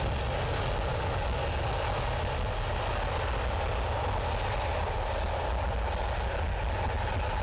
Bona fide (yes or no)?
yes